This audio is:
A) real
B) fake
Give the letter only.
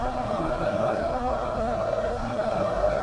B